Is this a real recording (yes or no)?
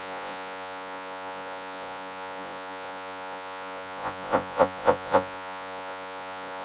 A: no